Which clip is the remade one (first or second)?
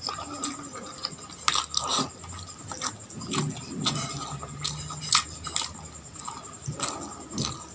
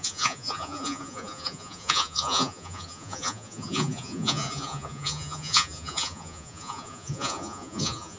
second